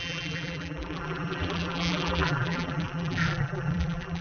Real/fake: fake